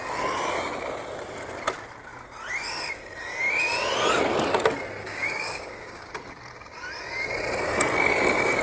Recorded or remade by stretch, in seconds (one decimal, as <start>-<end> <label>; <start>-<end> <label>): 0.0-5.0 recorded; 5.0-6.1 remade; 6.1-8.6 recorded